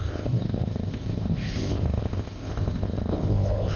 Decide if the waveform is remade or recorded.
remade